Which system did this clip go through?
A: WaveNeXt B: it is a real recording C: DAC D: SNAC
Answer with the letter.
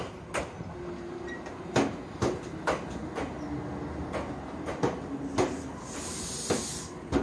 B